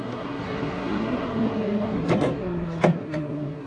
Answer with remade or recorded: remade